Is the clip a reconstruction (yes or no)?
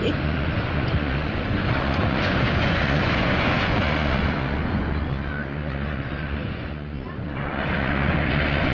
yes